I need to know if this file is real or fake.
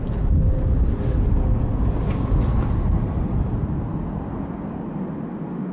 real